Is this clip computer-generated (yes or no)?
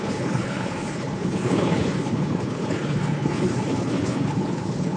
yes